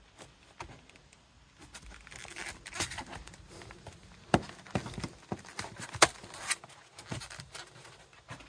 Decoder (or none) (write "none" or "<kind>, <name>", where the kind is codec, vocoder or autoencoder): none